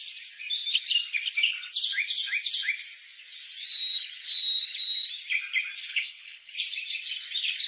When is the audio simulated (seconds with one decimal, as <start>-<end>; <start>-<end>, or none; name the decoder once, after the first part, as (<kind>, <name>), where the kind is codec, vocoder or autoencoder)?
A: 5.9-6.5 (codec, HILCodec)